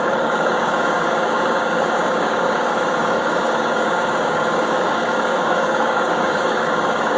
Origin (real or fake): fake